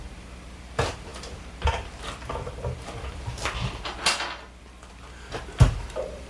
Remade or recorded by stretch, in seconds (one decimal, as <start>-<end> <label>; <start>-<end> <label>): 0.0-6.3 remade